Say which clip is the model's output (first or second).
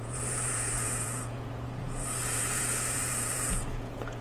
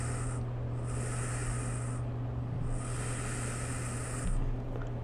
first